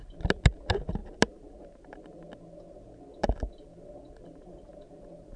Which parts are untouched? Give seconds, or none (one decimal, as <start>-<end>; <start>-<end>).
0.0-5.4